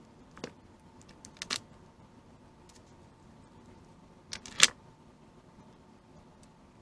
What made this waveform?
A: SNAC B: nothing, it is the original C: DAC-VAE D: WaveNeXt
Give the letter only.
B